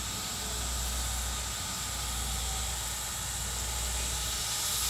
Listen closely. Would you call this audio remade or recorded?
recorded